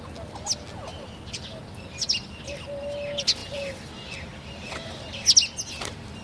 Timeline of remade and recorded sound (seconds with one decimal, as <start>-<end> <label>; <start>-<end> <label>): 0.0-0.9 recorded; 0.9-1.8 remade; 1.8-3.4 recorded; 3.4-5.1 remade; 5.1-6.2 recorded